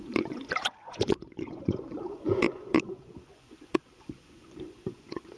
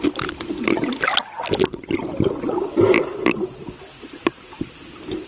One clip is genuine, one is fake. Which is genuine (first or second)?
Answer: second